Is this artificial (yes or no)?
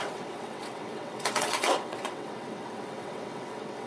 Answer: yes